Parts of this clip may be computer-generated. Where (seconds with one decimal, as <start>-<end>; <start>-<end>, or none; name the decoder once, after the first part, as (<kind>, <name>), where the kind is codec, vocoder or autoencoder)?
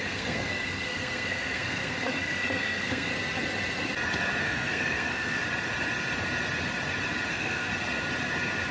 0.0-3.1 (codec, SNAC); 4.4-5.4; 7.3-7.7